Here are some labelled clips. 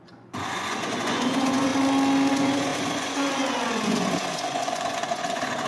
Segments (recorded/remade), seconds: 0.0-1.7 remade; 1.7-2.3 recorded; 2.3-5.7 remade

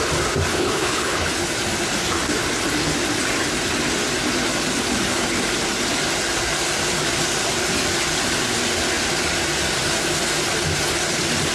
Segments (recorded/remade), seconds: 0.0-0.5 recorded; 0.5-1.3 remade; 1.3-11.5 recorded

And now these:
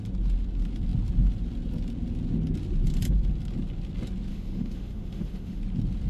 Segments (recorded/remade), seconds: 0.0-4.3 recorded; 4.3-5.6 remade; 5.6-6.1 recorded

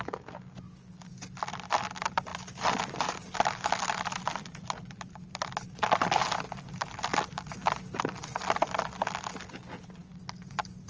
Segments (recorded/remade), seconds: 0.0-10.9 recorded